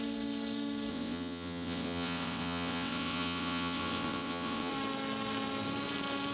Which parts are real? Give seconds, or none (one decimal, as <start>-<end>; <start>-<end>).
0.0-0.9; 4.7-6.3